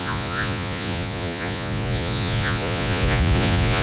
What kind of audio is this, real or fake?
fake